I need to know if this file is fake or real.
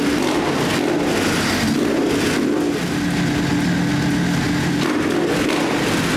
real